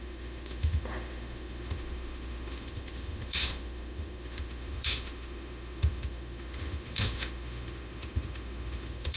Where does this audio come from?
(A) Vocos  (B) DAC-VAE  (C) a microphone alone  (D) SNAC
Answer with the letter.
B